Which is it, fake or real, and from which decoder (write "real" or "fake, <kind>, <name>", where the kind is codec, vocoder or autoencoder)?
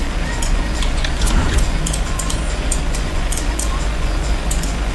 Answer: fake, vocoder, Vocos